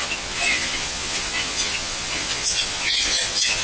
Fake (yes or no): yes